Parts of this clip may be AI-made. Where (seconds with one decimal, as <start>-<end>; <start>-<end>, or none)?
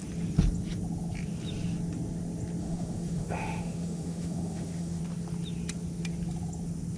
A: 2.6-5.0